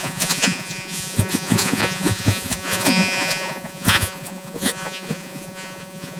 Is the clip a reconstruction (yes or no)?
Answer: yes